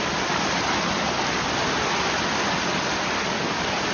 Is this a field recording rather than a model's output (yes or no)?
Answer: yes